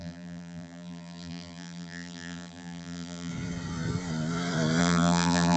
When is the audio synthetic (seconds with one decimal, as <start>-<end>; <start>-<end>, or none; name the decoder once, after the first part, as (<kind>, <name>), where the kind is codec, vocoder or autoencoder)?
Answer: 0.0-3.3 (vocoder, BigVGAN v2); 4.8-5.6